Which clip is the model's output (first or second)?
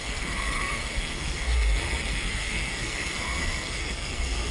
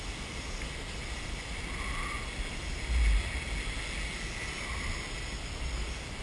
first